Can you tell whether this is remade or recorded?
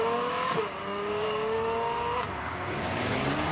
remade